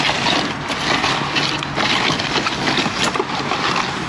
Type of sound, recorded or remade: recorded